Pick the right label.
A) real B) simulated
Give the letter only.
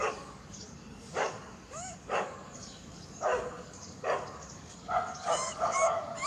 B